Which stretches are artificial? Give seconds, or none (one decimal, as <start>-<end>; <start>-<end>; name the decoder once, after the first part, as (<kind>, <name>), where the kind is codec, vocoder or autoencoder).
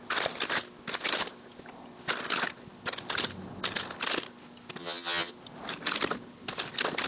4.8-5.3 (vocoder, HiFi-GAN)